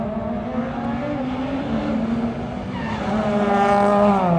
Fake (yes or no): no